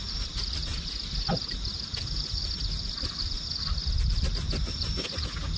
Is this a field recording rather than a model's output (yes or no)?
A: yes